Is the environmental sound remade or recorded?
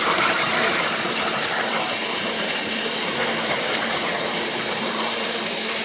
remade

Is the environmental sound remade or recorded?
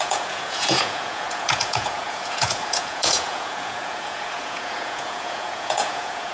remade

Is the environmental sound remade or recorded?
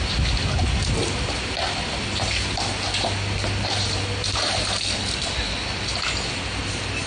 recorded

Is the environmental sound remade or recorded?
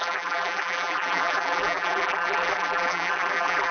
remade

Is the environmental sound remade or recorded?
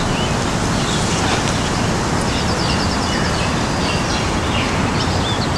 recorded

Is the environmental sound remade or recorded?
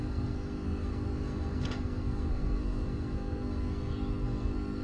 remade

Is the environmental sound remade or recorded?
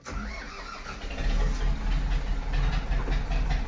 recorded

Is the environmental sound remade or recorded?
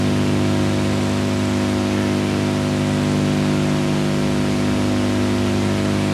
recorded